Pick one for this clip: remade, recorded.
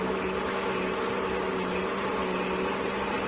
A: recorded